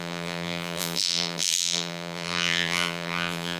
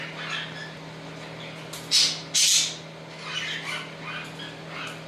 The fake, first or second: first